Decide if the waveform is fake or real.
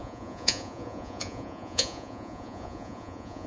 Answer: fake